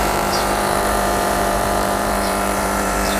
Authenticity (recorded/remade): remade